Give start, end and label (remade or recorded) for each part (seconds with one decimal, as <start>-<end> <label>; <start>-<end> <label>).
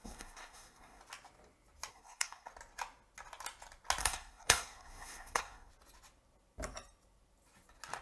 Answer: 0.0-1.0 remade; 1.0-1.9 recorded; 1.9-2.5 remade; 2.5-4.0 recorded; 4.0-5.7 remade; 5.7-8.0 recorded